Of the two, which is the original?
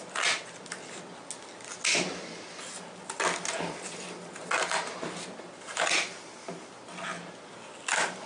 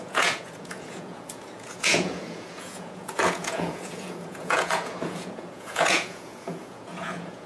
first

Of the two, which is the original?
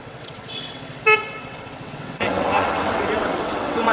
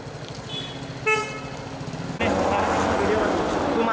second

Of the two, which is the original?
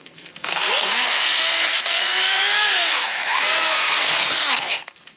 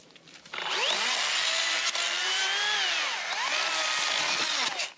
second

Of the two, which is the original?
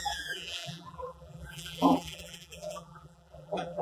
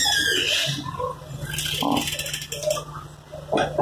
second